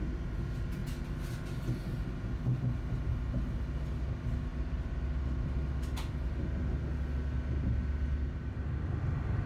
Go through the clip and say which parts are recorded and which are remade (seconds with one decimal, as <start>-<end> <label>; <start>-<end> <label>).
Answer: 0.0-4.5 recorded; 4.5-5.6 remade; 5.6-9.5 recorded